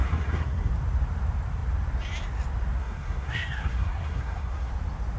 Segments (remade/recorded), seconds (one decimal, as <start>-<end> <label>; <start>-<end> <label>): 0.0-0.7 remade; 0.7-2.8 recorded; 2.8-4.7 remade; 4.7-5.2 recorded